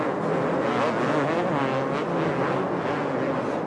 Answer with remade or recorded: recorded